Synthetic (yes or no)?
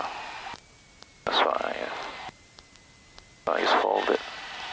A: no